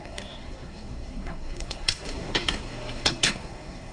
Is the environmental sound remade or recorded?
remade